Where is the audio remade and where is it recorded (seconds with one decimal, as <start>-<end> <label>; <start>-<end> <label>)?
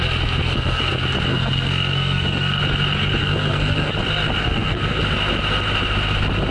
0.0-0.4 recorded; 0.4-0.9 remade; 0.9-1.3 recorded; 1.3-2.6 remade; 2.6-3.2 recorded; 3.2-3.9 remade; 3.9-4.4 recorded; 4.4-5.0 remade; 5.0-6.5 recorded